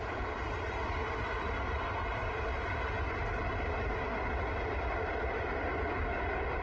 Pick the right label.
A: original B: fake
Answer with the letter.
A